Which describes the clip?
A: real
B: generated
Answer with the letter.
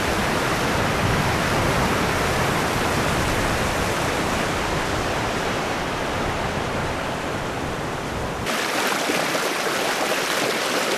B